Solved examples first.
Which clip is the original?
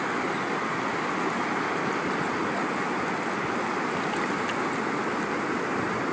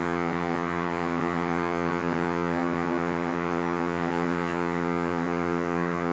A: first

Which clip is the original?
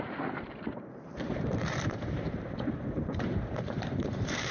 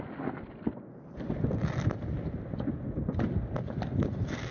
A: second